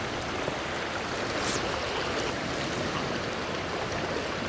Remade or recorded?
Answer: recorded